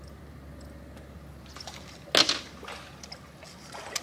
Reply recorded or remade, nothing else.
recorded